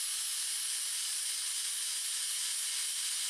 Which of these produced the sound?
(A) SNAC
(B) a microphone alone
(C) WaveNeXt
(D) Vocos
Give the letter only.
B